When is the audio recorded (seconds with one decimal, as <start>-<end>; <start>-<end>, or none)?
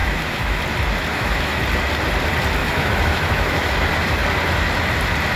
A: 0.6-1.1; 1.6-2.6; 3.7-5.4